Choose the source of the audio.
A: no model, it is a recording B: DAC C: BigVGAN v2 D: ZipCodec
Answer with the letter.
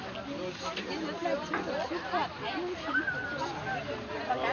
A